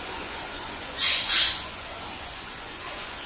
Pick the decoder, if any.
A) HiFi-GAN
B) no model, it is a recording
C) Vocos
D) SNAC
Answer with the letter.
C